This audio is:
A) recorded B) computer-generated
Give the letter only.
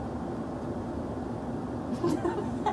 A